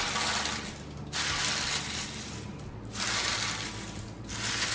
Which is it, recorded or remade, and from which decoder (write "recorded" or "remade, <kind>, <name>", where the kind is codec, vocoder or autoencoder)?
recorded